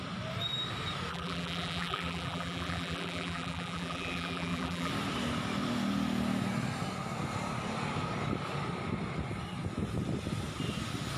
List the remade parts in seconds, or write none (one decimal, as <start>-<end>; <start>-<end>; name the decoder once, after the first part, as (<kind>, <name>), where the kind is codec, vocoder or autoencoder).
1.1-4.9 (vocoder, BigVGAN v2)